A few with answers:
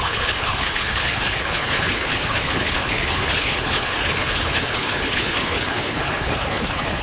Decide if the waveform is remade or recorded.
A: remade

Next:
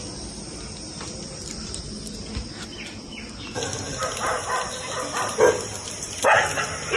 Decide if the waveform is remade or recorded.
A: recorded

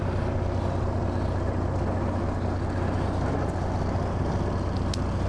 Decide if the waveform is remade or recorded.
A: recorded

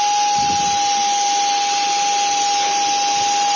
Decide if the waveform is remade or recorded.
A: recorded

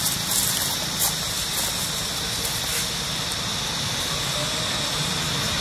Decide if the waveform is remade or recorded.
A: recorded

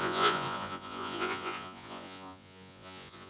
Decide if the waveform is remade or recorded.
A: remade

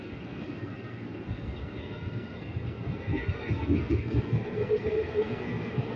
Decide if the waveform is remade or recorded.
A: remade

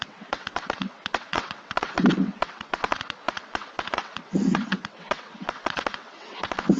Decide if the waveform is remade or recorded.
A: remade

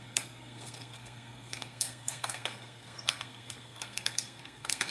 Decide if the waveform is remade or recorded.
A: remade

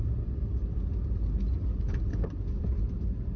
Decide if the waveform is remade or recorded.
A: remade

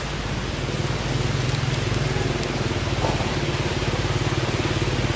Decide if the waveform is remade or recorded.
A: recorded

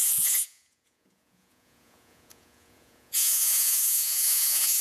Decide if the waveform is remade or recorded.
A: remade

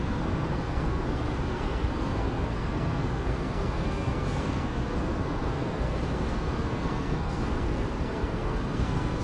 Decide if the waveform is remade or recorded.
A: remade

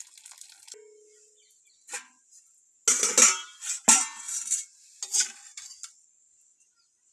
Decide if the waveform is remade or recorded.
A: recorded